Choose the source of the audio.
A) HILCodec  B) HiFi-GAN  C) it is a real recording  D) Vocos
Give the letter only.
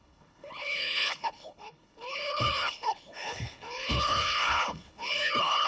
A